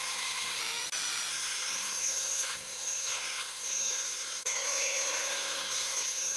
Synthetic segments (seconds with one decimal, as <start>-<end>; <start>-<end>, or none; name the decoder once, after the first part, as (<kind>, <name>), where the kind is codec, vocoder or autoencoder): 0.0-0.6 (codec, SNAC); 1.3-6.4